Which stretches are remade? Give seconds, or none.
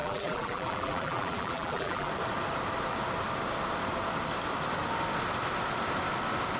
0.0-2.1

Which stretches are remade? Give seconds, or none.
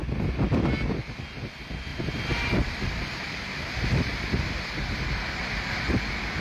1.9-4.2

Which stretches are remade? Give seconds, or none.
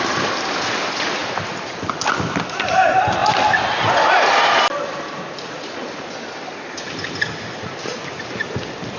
0.0-1.2; 2.7-3.2; 7.4-9.0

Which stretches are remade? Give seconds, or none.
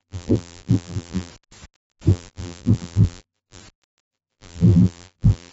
0.0-1.3; 2.1-3.6; 4.1-5.5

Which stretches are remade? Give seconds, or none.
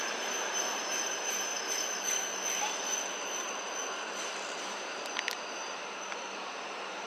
0.0-1.5; 4.2-7.1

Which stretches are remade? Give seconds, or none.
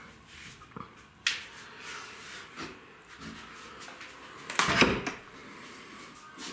none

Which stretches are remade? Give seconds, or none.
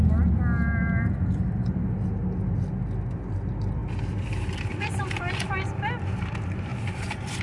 6.7-7.4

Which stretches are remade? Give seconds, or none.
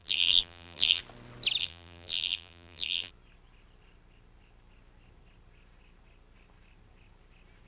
0.0-1.0; 1.6-3.1